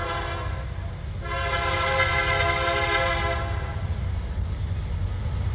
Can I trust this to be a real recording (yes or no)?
yes